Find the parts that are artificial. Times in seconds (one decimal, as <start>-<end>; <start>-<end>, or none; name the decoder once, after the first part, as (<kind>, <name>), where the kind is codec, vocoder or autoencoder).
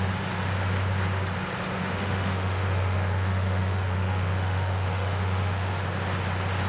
1.8-5.8 (autoencoder, DAC-VAE)